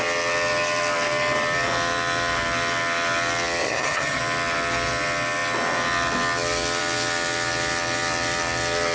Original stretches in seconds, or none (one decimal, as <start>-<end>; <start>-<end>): 0.0-3.6; 4.2-8.9